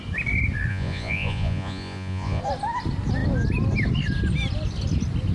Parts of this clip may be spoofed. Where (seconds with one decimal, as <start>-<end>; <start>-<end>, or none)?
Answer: 0.7-2.4